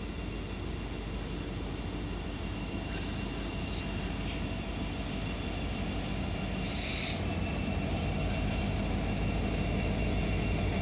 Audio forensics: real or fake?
real